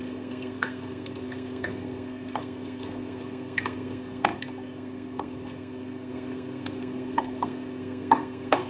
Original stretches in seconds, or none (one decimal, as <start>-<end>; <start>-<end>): none